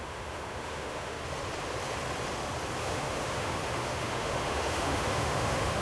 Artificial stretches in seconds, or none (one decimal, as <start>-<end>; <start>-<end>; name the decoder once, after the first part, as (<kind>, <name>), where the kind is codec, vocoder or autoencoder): 0.0-1.2 (autoencoder, DAC-VAE); 2.8-5.8